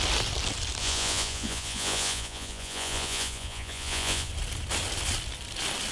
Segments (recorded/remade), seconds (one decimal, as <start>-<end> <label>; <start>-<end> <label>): 0.0-0.8 recorded; 0.8-4.3 remade; 4.3-5.9 recorded